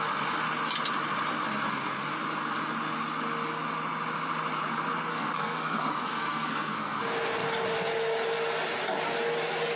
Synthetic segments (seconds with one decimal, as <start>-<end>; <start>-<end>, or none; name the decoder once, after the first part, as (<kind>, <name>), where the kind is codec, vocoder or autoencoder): 5.1-7.0 (codec, SNAC)